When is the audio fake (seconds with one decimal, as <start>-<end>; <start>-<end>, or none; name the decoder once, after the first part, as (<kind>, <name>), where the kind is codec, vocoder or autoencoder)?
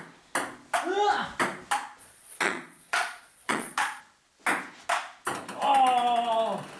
2.0-4.0 (vocoder, Vocos)